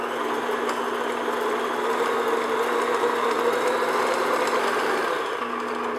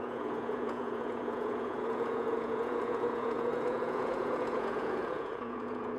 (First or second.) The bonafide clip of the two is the first